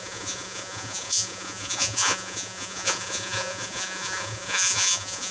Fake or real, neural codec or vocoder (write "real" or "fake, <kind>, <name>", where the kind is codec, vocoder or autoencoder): fake, vocoder, Vocos